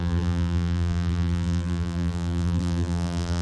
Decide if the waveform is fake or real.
fake